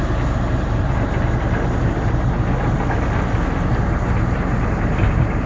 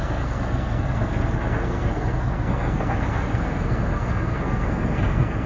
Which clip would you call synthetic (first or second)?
second